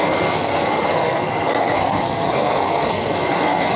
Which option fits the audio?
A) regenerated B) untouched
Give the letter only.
A